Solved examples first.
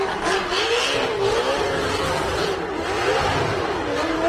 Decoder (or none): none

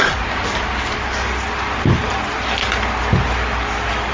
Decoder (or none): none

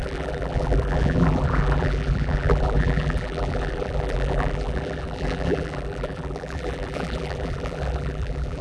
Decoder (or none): vocoder, BigVGAN v2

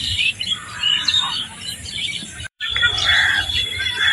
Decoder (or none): vocoder, BigVGAN v2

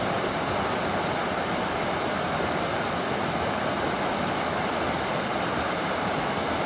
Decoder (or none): none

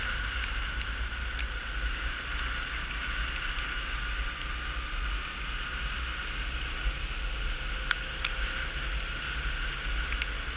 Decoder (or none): none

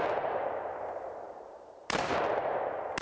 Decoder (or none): vocoder, BigVGAN v2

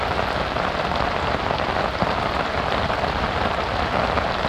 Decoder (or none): none